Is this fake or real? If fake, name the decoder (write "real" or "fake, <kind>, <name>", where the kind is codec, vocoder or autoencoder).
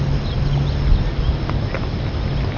real